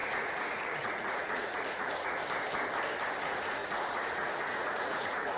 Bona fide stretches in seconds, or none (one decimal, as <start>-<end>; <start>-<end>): 2.2-3.2